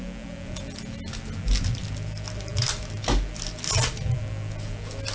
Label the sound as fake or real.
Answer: real